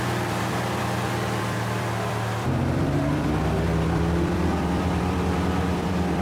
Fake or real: fake